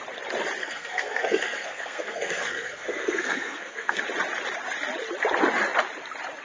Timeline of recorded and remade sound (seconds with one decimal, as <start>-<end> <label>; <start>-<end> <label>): 0.0-0.6 recorded; 0.6-4.0 remade; 4.0-6.4 recorded